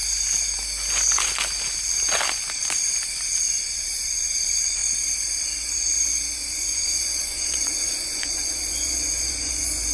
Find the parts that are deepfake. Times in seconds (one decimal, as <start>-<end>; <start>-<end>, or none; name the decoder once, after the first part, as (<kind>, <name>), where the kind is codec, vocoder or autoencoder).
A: 3.4-4.8 (vocoder, Vocos); 6.5-9.9